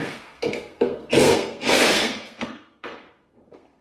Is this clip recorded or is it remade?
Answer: remade